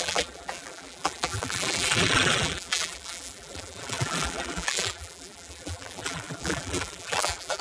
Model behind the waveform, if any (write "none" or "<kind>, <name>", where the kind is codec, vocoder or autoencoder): vocoder, BigVGAN v2